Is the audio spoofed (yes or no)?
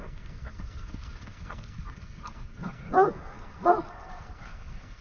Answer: yes